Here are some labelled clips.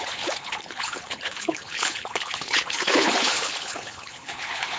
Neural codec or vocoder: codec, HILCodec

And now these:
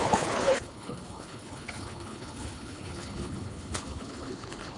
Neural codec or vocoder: codec, HILCodec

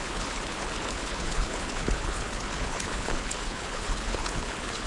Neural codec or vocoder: codec, HILCodec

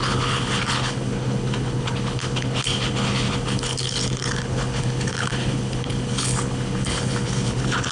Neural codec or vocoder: codec, HILCodec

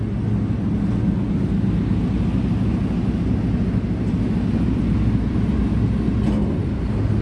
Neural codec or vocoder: none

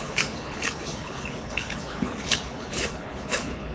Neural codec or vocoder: codec, HILCodec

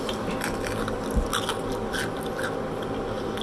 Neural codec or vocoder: none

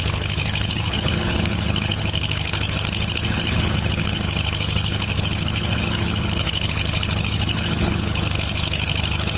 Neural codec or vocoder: codec, HILCodec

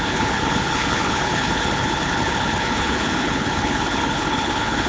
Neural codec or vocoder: codec, HILCodec